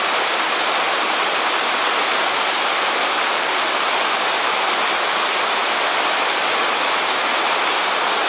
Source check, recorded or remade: recorded